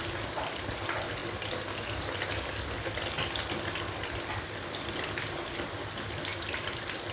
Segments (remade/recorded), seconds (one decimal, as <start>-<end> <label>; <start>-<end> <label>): 0.0-7.1 recorded